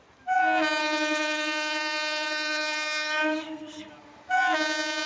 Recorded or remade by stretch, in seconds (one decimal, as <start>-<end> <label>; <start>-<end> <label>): 0.0-0.8 recorded; 0.8-3.9 remade; 3.9-5.1 recorded